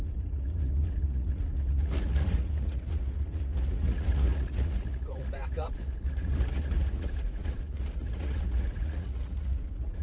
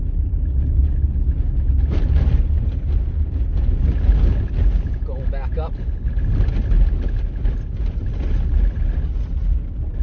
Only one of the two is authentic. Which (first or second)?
second